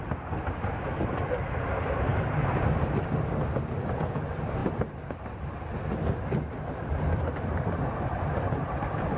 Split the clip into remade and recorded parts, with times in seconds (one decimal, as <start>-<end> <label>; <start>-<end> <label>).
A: 0.0-9.2 recorded